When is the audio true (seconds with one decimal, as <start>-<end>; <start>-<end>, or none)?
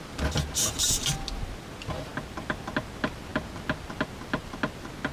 0.0-5.1